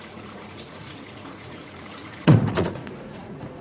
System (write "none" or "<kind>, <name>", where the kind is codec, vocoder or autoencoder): vocoder, Vocos